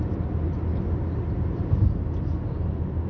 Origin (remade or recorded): recorded